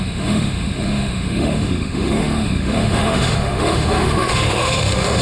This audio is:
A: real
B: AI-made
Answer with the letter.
B